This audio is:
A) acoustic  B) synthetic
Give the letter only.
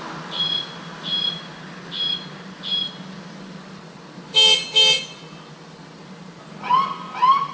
A